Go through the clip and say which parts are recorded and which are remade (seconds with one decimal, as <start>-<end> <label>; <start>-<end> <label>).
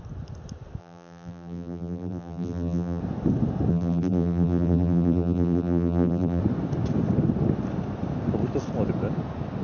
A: 0.0-0.8 recorded; 0.8-3.0 remade; 3.0-3.7 recorded; 3.7-6.4 remade; 6.4-9.6 recorded